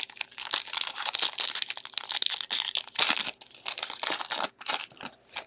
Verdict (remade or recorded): recorded